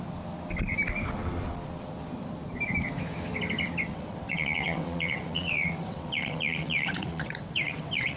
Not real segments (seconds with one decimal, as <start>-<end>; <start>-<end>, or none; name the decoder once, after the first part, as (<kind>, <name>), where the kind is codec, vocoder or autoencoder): 3.9-8.2 (vocoder, WaveNeXt)